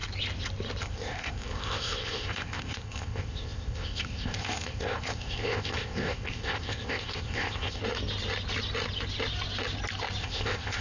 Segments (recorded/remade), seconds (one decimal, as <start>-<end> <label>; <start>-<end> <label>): 0.0-0.8 recorded; 0.8-7.8 remade; 7.8-10.2 recorded; 10.2-10.8 remade